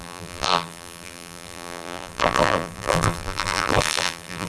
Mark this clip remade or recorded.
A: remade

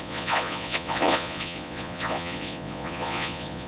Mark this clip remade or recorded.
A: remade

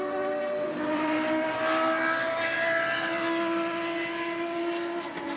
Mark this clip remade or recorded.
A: recorded